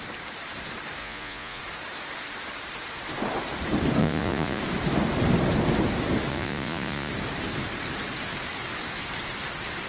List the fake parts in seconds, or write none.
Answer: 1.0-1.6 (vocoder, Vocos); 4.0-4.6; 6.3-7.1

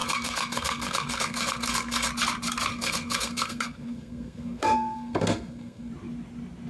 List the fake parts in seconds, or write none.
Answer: 0.0-2.1 (codec, SNAC); 2.7-5.9

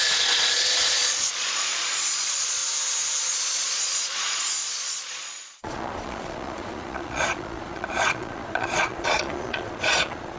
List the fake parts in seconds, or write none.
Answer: 0.0-2.6 (vocoder, Vocos); 3.2-10.4

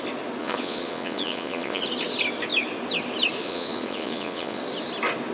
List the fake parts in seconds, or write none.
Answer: 0.4-1.8 (vocoder, Vocos); 3.4-4.6

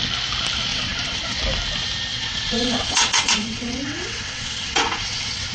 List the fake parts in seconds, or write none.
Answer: 0.7-1.4 (vocoder, WaveNeXt); 2.1-5.5

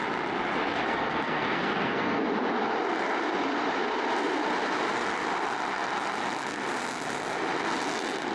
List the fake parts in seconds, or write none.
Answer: 0.7-2.2 (codec, SNAC)